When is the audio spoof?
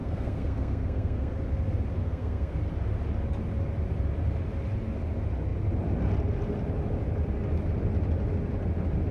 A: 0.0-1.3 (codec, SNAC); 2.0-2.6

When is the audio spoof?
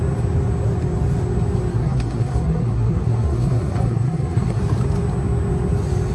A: 1.7-4.6 (codec, SNAC)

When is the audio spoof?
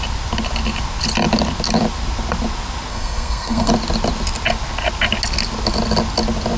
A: 2.9-3.7 (codec, SNAC)